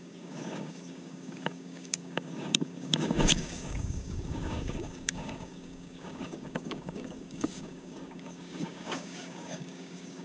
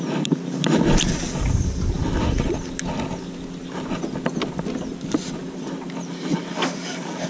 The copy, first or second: first